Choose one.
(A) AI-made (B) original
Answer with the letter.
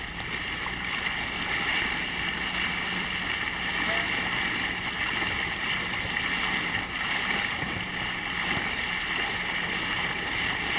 B